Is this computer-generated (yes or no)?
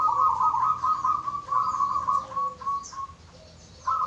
no